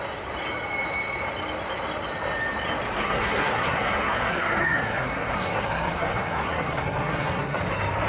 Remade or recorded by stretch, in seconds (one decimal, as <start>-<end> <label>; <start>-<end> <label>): 0.0-3.0 recorded; 3.0-7.6 remade; 7.6-8.1 recorded